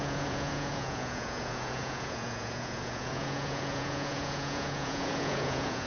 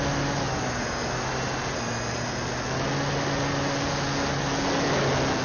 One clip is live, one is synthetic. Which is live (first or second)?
second